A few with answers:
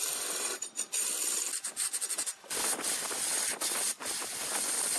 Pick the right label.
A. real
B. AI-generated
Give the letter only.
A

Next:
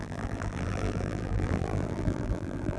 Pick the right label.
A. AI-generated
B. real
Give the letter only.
A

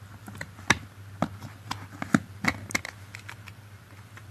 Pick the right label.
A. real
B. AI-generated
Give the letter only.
A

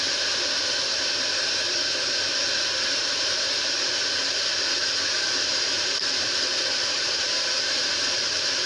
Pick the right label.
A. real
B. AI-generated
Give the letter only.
B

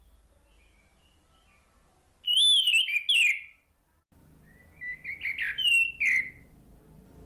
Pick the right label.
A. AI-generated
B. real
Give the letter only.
B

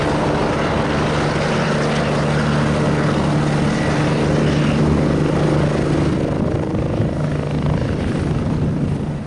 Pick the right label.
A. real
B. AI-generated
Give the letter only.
A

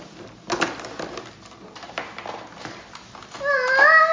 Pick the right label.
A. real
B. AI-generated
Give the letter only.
A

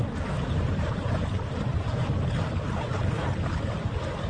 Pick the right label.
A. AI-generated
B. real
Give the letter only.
A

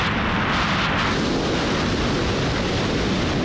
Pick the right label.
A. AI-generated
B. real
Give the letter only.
B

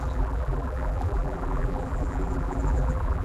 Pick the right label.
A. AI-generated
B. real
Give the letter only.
A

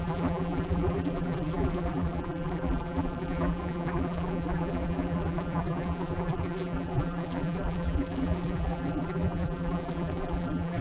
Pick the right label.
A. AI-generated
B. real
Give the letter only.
A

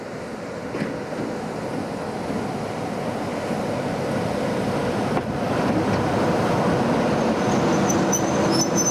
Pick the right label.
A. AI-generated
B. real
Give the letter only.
B